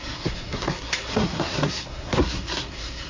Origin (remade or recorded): remade